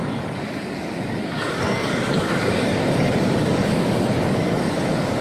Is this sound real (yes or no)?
no